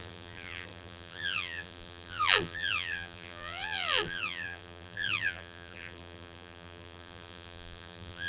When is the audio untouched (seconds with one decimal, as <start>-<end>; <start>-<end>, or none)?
none